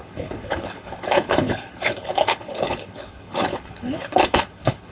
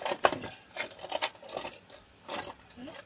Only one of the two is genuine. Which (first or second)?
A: second